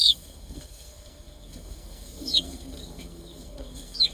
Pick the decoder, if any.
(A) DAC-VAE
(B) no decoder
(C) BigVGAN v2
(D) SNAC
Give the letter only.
D